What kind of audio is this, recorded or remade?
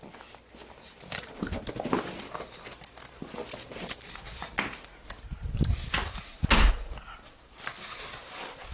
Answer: recorded